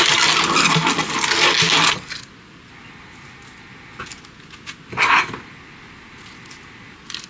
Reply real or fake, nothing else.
real